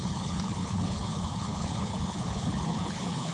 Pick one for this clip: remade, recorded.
remade